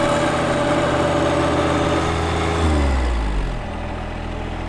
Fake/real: real